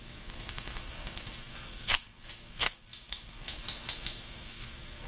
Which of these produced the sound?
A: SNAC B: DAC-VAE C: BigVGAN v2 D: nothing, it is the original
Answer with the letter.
A